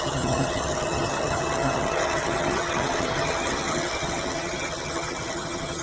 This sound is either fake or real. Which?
fake